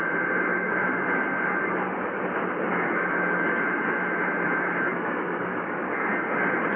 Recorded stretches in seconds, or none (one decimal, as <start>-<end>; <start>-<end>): 0.0-0.5; 1.2-2.7; 6.1-6.8